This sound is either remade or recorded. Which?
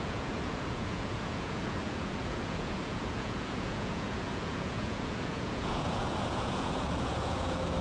remade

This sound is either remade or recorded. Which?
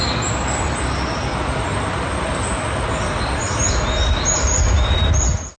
recorded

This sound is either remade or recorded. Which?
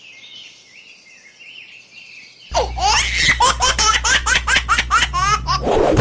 recorded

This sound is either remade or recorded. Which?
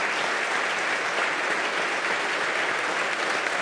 recorded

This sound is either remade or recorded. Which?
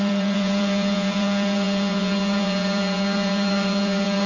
remade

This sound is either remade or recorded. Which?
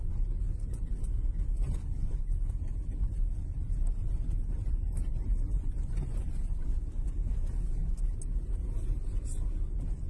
recorded